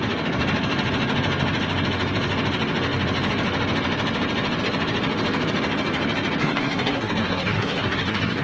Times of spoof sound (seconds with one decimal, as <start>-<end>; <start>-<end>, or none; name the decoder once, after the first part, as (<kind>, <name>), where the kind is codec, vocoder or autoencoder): 6.4-8.4 (codec, SNAC)